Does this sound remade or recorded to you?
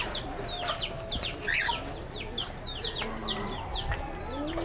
recorded